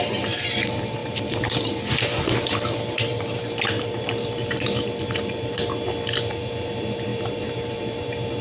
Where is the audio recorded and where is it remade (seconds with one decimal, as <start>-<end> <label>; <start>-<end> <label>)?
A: 0.0-5.6 remade; 5.6-6.3 recorded; 6.3-8.4 remade